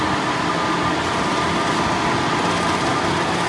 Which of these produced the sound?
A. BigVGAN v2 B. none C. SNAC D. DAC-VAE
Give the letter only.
B